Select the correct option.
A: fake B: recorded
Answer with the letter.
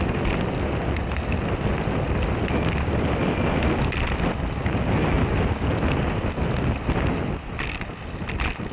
B